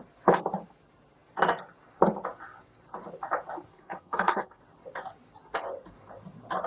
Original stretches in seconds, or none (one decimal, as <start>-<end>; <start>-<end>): 0.0-3.7; 4.6-6.7